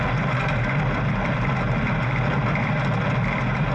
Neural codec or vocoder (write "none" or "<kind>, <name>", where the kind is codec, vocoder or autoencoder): none